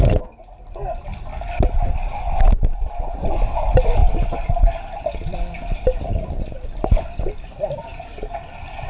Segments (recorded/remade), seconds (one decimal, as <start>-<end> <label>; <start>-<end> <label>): 0.0-8.9 recorded